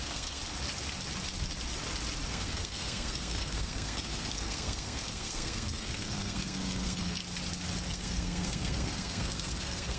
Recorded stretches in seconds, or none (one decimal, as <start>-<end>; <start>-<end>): 0.4-2.3; 7.2-7.9